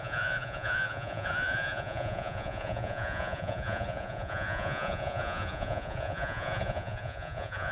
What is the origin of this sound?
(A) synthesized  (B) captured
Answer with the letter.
A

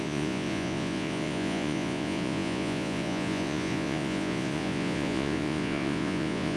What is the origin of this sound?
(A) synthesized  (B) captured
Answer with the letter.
A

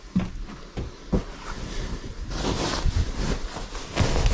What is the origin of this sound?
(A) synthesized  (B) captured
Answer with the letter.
B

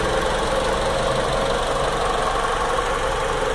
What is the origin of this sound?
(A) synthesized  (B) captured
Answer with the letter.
B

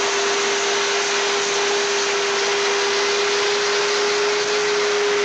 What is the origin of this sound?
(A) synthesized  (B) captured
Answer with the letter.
B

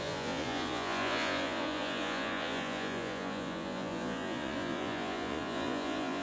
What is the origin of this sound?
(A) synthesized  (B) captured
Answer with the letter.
A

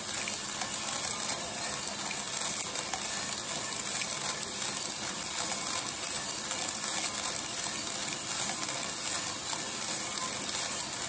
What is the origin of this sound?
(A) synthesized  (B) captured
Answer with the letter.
B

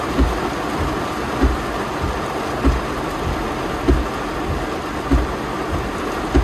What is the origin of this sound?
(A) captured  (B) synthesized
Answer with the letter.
A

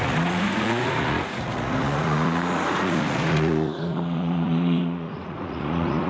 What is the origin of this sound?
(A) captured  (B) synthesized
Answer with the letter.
B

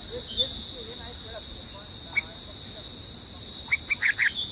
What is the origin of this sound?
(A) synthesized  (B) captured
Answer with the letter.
B